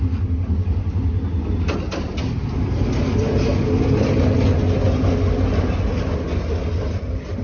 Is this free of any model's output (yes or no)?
yes